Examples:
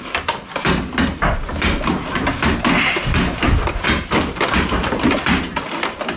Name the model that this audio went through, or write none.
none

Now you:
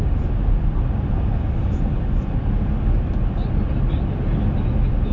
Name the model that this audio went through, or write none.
none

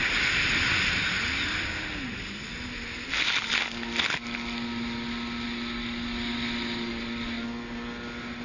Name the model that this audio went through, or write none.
none